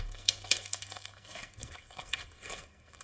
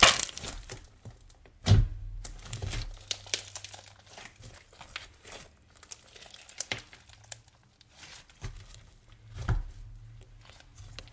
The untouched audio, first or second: second